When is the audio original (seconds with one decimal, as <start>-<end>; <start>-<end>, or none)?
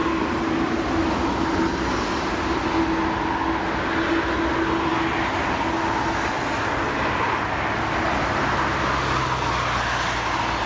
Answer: 0.0-10.7